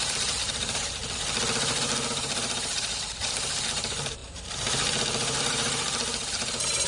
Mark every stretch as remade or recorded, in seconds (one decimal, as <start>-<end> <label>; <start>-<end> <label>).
0.0-1.0 remade; 1.0-2.2 recorded; 2.2-4.2 remade; 4.2-5.4 recorded; 5.4-6.9 remade